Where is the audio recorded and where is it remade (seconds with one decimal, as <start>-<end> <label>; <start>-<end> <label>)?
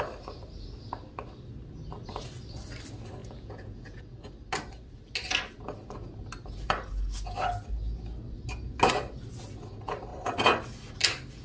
0.0-3.2 recorded; 3.2-4.3 remade; 4.3-11.4 recorded